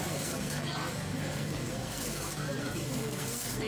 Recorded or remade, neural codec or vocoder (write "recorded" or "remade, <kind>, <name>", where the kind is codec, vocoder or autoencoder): remade, codec, SNAC